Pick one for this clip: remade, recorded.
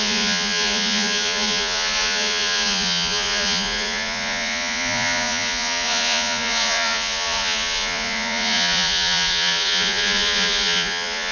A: remade